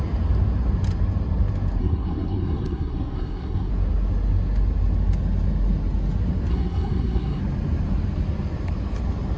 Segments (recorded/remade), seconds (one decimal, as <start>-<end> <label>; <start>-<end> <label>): 0.0-1.8 recorded; 1.8-3.7 remade; 3.7-6.5 recorded; 6.5-7.4 remade; 7.4-9.4 recorded